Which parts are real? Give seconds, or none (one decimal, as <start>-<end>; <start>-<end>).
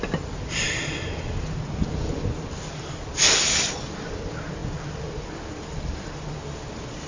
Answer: 0.0-7.1